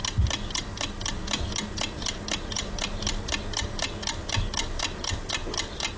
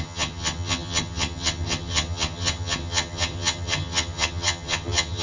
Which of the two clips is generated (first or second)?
second